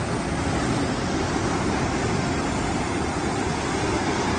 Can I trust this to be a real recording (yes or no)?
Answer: yes